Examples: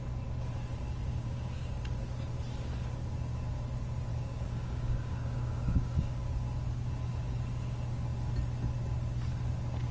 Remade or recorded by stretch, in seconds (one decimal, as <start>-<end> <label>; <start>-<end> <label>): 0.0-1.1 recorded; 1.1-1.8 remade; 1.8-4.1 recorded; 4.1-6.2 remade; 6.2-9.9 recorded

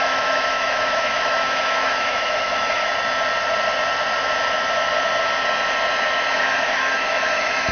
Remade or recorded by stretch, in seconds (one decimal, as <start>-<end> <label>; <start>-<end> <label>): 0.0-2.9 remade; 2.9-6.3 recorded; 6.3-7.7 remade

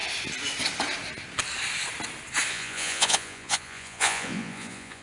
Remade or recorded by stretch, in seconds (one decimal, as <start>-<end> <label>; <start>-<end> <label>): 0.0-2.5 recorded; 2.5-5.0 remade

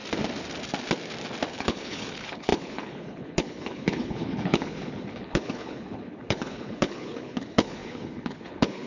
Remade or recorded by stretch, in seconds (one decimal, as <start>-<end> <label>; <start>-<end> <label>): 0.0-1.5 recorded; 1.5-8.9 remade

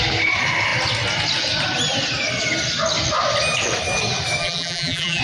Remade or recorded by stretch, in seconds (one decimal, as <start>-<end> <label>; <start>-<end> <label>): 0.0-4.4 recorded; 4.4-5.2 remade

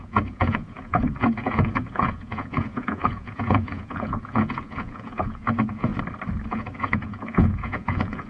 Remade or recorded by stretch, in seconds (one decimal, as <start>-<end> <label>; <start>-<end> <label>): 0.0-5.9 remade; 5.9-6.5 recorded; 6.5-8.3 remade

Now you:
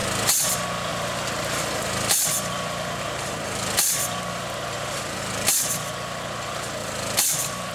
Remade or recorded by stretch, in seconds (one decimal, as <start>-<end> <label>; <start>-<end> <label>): 0.0-0.9 recorded; 0.9-5.2 remade; 5.2-6.8 recorded; 6.8-7.7 remade

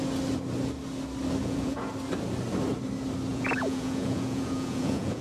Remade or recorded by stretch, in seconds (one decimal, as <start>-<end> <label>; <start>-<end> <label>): 0.0-1.4 recorded; 1.4-1.9 remade; 1.9-3.3 recorded; 3.3-5.2 remade